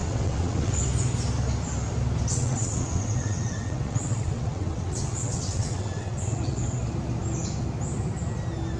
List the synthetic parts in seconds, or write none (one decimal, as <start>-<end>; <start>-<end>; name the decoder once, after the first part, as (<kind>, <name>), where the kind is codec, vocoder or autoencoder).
0.0-0.8 (vocoder, WaveNeXt); 2.3-6.8